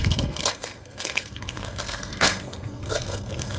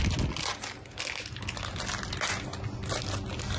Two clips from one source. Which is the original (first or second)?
second